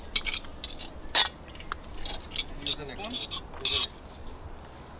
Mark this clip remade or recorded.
recorded